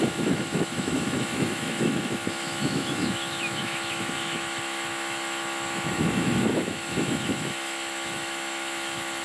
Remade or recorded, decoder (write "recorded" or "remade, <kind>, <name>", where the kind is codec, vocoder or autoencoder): remade, autoencoder, DAC-VAE